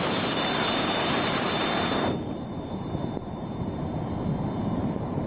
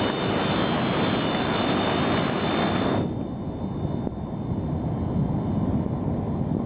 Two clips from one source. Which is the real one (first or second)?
second